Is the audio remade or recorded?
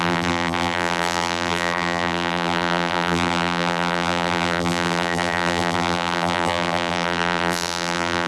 remade